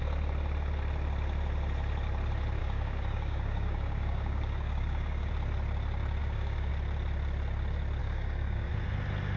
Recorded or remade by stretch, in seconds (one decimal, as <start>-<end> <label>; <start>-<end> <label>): 0.0-2.6 recorded; 2.6-5.3 remade; 5.3-6.2 recorded; 6.2-6.7 remade; 6.7-8.0 recorded; 8.0-8.7 remade; 8.7-9.4 recorded